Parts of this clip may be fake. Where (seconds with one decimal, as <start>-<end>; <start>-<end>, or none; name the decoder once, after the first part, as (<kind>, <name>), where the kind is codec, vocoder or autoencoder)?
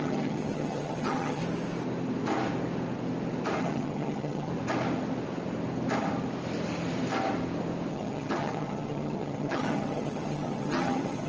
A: 0.0-1.4 (vocoder, HiFi-GAN); 3.6-4.5; 7.9-11.3